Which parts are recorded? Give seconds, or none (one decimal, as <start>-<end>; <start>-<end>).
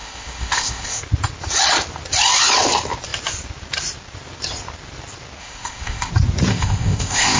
1.0-5.4; 6.1-6.5